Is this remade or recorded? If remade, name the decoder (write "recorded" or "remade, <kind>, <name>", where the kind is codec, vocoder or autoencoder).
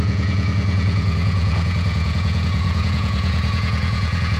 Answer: remade, vocoder, Vocos